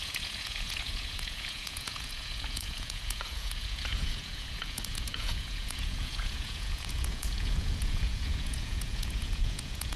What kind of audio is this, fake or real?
fake